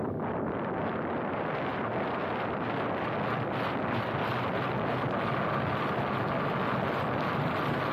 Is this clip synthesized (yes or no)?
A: no